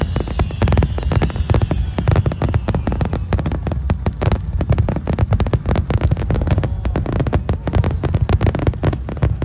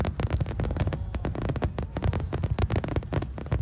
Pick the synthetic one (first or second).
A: second